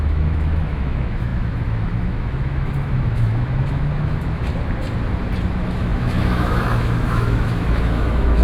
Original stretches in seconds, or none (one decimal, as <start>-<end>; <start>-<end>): 4.5-5.5